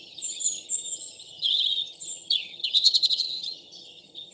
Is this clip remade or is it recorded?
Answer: remade